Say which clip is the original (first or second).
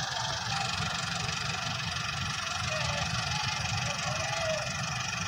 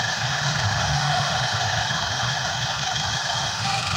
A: first